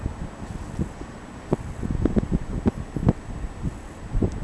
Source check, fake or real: real